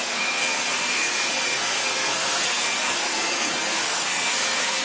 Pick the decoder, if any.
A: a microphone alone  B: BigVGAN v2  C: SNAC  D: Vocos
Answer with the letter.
C